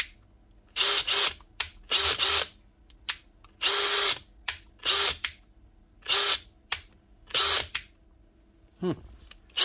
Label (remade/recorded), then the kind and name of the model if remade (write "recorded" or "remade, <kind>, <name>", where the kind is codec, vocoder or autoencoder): recorded